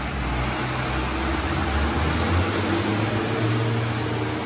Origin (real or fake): real